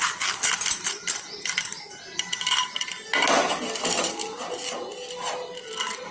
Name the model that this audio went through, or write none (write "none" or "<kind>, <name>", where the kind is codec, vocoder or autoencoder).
none